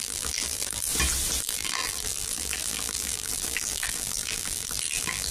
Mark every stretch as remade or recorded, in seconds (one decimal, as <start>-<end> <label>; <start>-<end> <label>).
0.0-0.9 remade; 0.9-1.4 recorded; 1.4-5.3 remade